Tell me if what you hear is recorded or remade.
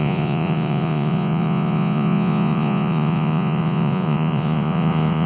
remade